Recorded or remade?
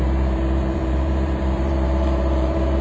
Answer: remade